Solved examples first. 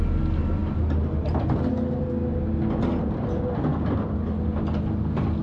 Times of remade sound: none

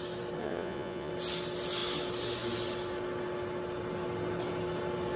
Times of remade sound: 0.4-1.1 (vocoder, Vocos)

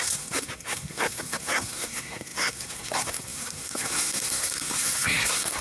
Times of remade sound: 0.0-5.6 (codec, SNAC)

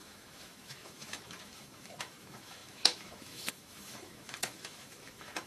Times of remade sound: 0.0-5.5 (autoencoder, DAC-VAE)